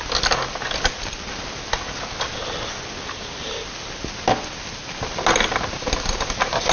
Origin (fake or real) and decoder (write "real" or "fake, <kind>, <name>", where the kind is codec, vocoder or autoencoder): real